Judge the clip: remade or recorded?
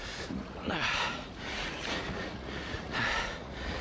remade